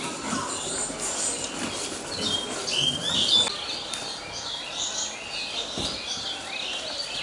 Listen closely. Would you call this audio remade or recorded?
recorded